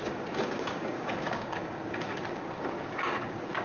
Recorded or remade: remade